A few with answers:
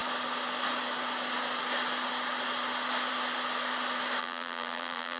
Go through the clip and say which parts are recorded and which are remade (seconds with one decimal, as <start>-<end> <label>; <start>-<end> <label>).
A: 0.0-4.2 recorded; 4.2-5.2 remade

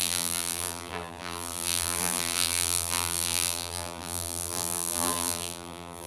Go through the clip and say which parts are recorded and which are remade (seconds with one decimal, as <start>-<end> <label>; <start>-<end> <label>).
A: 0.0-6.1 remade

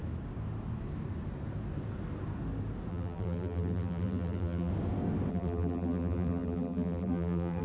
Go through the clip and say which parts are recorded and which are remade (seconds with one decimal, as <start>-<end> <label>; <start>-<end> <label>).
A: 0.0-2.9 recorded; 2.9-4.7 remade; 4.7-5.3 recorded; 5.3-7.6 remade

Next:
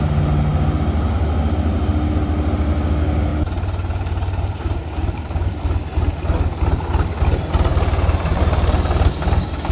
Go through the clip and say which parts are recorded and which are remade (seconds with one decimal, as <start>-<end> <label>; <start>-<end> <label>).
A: 0.0-3.3 recorded; 3.3-5.6 remade; 5.6-8.3 recorded; 8.3-9.1 remade; 9.1-9.7 recorded